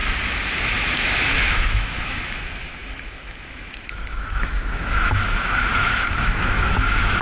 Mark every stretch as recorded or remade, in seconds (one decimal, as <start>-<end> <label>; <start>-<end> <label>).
0.0-0.6 recorded; 0.6-7.2 remade